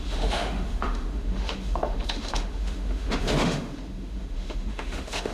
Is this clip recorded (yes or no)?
no